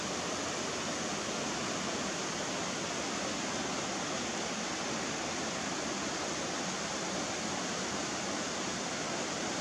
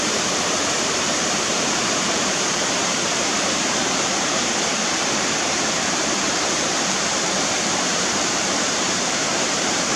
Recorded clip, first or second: first